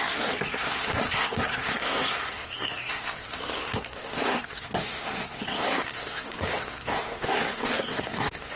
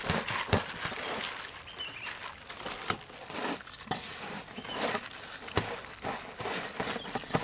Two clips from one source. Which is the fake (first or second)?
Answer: first